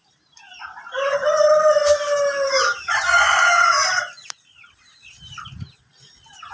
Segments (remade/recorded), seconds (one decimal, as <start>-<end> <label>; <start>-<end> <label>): 0.0-1.1 remade; 1.1-1.8 recorded; 1.8-5.7 remade; 5.7-6.5 recorded